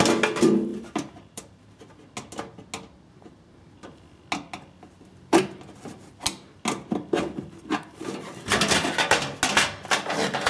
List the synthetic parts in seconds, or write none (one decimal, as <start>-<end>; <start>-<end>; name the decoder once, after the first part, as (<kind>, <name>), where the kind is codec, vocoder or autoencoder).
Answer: 0.7-1.8 (vocoder, BigVGAN v2)